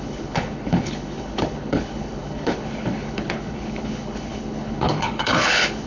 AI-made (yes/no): yes